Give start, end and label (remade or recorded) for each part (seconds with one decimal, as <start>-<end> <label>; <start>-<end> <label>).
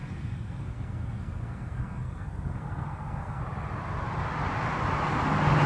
0.0-3.4 remade; 3.4-5.7 recorded